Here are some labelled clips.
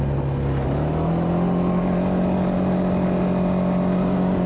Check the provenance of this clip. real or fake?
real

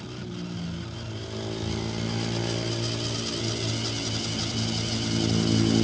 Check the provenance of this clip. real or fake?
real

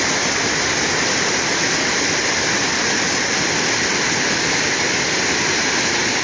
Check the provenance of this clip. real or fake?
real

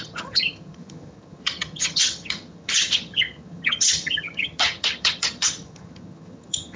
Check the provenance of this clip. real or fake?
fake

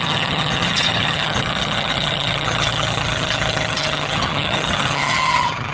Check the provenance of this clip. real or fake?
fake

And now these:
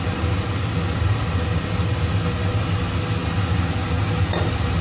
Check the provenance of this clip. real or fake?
real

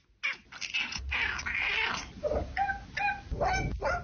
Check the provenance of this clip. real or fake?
real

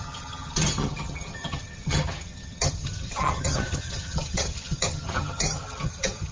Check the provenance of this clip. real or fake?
fake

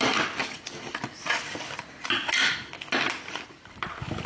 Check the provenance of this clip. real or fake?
real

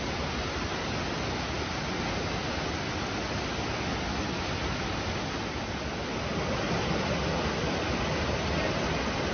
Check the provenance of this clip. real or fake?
real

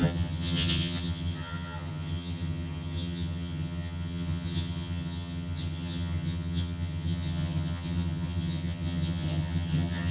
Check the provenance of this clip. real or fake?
fake